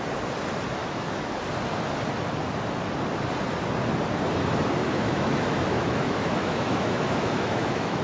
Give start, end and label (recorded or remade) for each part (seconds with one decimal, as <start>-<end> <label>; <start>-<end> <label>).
0.0-0.8 recorded; 0.8-1.3 remade; 1.3-4.8 recorded; 4.8-8.0 remade

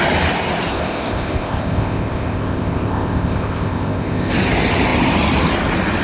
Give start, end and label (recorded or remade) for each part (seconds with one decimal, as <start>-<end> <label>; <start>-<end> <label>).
0.0-0.7 recorded; 0.7-4.3 remade; 4.3-6.0 recorded

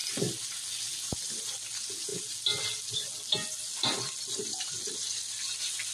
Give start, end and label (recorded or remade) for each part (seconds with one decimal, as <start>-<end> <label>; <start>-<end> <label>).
0.0-5.9 recorded

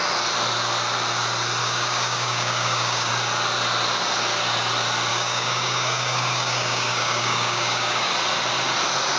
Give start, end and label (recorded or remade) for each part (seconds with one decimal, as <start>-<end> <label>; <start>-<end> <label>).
0.0-1.6 recorded; 1.6-3.1 remade; 3.1-5.1 recorded; 5.1-8.1 remade; 8.1-9.2 recorded

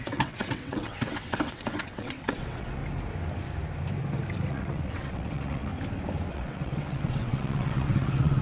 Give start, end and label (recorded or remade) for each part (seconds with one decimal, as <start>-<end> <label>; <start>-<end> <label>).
0.0-2.8 remade; 2.8-4.5 recorded; 4.5-5.7 remade; 5.7-6.3 recorded; 6.3-8.4 remade